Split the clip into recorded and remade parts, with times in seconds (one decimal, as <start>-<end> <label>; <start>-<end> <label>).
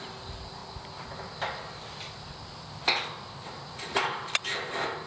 0.0-0.6 remade; 0.6-3.7 recorded; 3.7-5.1 remade